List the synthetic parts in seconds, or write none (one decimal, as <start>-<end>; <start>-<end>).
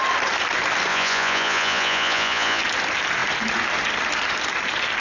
0.9-2.6